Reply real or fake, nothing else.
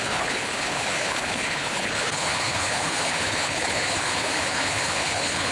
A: fake